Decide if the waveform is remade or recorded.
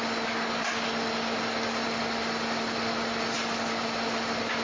recorded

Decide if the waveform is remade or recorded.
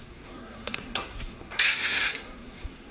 remade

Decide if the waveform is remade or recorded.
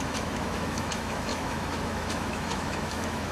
remade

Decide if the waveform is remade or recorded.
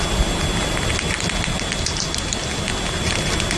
recorded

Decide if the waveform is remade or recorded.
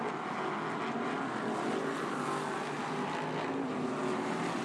recorded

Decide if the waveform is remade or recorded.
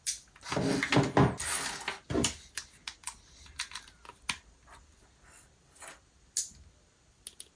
recorded